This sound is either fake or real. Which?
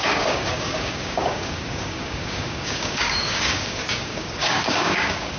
fake